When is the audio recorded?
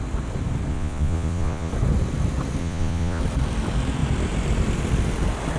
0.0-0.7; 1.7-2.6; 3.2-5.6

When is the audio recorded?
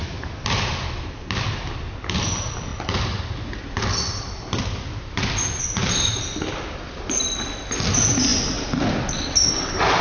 0.0-10.0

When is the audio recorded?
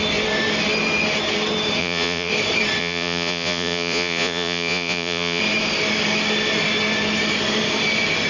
0.0-1.8; 2.3-2.8; 5.4-8.3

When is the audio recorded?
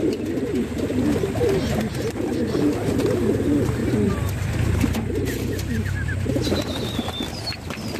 0.0-8.0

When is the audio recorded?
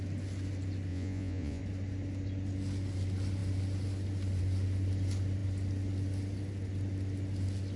0.0-0.9; 1.6-7.8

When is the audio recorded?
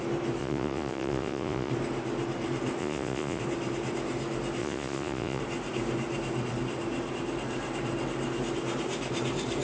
0.0-0.4; 1.7-2.8; 3.4-4.6; 5.4-9.6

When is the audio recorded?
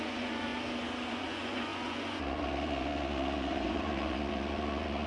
0.5-1.1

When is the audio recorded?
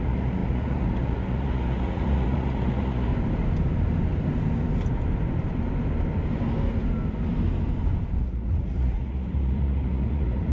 3.1-8.2